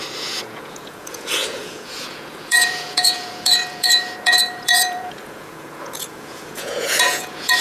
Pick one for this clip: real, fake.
fake